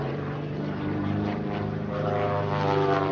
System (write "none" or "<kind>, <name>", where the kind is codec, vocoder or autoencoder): vocoder, BigVGAN v2